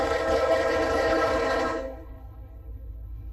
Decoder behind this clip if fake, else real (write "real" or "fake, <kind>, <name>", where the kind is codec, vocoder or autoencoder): fake, codec, HILCodec